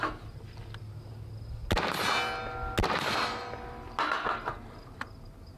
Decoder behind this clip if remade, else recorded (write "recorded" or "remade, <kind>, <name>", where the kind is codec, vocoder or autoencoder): recorded